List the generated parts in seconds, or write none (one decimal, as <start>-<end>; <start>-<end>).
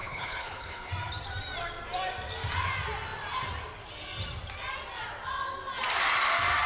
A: 0.0-0.9